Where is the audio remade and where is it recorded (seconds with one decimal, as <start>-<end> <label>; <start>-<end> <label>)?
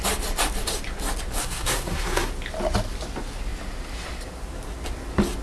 0.0-1.4 recorded; 1.4-2.3 remade; 2.3-5.4 recorded